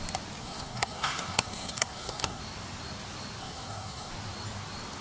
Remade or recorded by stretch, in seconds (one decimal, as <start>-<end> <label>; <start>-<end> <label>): 0.0-0.4 recorded; 0.4-2.4 remade; 2.4-3.4 recorded; 3.4-4.1 remade; 4.1-5.0 recorded